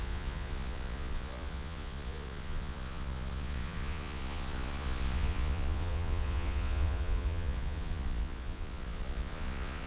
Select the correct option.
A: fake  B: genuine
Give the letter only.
A